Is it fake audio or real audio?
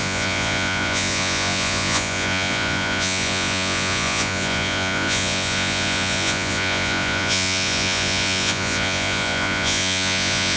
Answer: fake